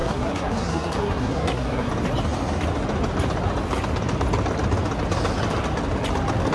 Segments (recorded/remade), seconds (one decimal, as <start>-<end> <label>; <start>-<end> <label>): 0.0-1.9 remade; 1.9-6.5 recorded